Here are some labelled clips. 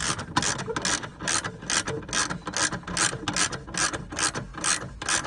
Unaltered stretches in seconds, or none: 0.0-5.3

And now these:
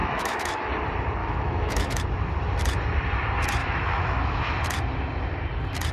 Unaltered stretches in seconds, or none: 0.7-1.2; 2.0-3.6; 4.4-5.9

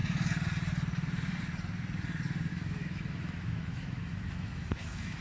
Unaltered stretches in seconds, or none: 0.0-2.5